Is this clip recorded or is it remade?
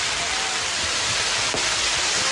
recorded